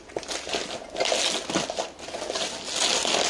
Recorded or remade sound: recorded